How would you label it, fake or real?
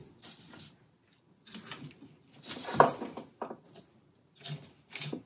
real